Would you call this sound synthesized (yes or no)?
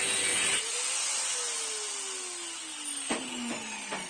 no